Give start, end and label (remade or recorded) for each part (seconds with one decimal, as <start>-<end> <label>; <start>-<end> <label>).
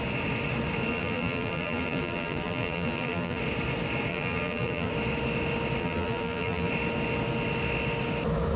0.0-0.9 recorded; 0.9-3.4 remade; 3.4-4.1 recorded; 4.1-4.9 remade; 4.9-5.8 recorded; 5.8-6.7 remade; 6.7-8.6 recorded